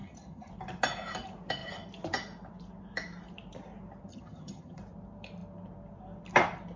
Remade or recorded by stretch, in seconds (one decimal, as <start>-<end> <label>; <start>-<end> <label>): 0.0-0.5 remade; 0.5-4.1 recorded; 4.1-4.8 remade; 4.8-6.8 recorded